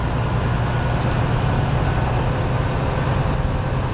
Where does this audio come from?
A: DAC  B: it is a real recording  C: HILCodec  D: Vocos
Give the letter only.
B